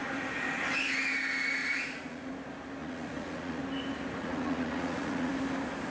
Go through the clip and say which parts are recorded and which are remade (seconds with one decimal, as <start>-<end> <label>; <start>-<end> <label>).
0.0-1.6 recorded; 1.6-2.3 remade; 2.3-2.8 recorded; 2.8-3.6 remade; 3.6-4.2 recorded; 4.2-5.3 remade; 5.3-5.9 recorded